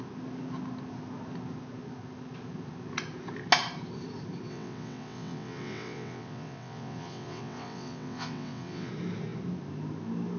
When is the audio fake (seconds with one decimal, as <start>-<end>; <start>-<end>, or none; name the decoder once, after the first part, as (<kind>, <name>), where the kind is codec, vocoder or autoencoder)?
4.5-8.9 (vocoder, WaveNeXt)